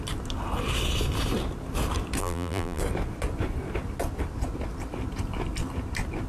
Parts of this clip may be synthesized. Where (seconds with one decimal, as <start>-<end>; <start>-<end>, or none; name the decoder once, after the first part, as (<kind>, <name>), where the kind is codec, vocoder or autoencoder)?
2.2-2.8 (vocoder, BigVGAN v2)

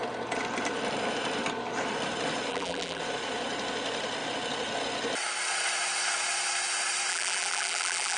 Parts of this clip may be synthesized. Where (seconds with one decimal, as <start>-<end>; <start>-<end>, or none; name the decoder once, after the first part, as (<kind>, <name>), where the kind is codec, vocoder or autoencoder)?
2.5-3.0 (vocoder, BigVGAN v2); 7.1-8.2

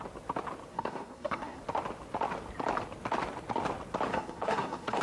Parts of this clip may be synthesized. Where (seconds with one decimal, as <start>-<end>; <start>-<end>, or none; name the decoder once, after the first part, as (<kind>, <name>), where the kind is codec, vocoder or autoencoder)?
0.7-1.6 (codec, SNAC); 4.1-5.0

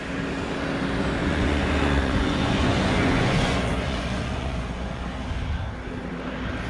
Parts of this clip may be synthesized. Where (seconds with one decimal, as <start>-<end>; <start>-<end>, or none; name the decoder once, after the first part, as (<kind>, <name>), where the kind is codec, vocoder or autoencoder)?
1.2-5.0 (vocoder, Vocos)

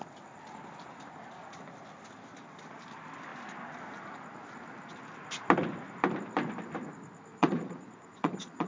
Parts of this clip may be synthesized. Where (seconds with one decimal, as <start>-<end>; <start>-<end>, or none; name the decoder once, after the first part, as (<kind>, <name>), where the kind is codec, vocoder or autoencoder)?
7.3-8.7 (vocoder, Vocos)

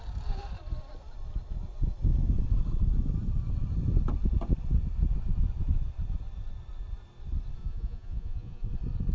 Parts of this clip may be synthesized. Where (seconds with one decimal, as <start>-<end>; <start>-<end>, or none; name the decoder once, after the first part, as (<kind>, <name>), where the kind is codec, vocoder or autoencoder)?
7.6-8.7 (vocoder, Vocos)

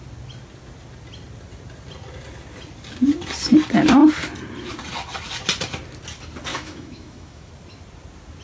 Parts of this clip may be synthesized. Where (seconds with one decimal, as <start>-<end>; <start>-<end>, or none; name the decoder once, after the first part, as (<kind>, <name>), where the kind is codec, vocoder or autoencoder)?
6.5-7.5 (autoencoder, DAC-VAE)

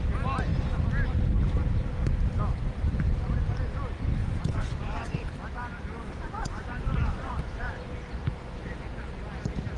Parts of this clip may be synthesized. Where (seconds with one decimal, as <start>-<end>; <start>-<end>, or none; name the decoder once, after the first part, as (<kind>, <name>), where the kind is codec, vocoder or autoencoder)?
4.2-5.2 (vocoder, Vocos); 6.0-9.2